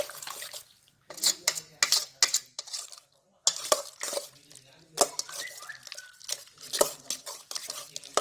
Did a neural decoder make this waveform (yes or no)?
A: no